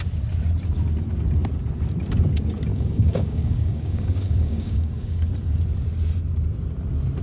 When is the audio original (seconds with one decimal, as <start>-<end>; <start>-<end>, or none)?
0.0-2.7; 5.3-7.2